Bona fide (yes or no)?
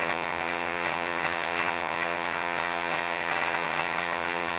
no